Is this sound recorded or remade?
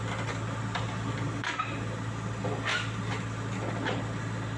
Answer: recorded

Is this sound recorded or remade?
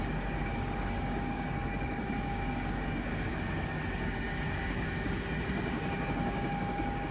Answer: remade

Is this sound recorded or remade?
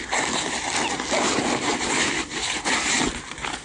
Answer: recorded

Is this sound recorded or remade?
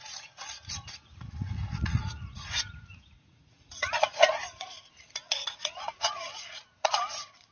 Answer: remade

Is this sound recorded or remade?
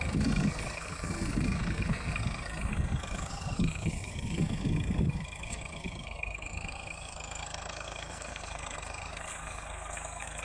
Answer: remade